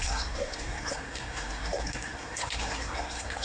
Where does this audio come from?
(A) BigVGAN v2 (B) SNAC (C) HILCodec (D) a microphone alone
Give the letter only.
B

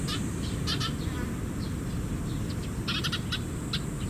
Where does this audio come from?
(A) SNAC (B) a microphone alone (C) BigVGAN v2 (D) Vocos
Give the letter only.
B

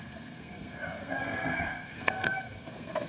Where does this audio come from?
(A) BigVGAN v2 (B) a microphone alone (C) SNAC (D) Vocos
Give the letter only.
C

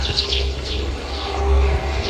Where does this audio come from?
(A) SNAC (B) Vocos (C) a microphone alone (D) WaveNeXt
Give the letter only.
A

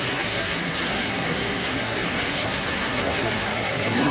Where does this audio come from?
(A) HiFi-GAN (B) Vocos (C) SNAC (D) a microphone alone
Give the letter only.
C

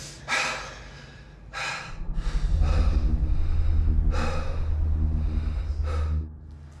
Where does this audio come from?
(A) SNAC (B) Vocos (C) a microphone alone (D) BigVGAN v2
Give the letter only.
C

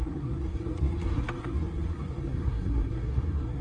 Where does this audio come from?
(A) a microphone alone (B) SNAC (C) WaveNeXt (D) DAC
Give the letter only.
B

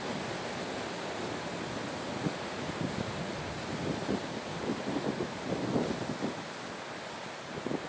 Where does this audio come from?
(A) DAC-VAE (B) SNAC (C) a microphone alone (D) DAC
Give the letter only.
C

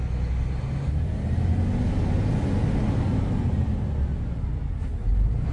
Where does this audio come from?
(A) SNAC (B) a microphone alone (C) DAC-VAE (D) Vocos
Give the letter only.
B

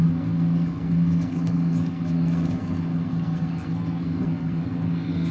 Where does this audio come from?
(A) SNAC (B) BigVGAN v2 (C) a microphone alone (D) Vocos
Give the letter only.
A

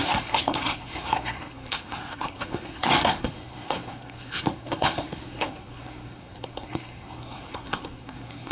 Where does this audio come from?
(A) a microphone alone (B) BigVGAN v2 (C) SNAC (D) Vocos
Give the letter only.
C